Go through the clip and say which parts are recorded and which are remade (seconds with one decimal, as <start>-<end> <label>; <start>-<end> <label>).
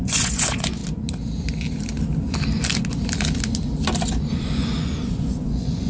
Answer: 0.0-0.8 remade; 0.8-4.3 recorded; 4.3-5.9 remade